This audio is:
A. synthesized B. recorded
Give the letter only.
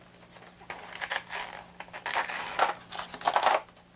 B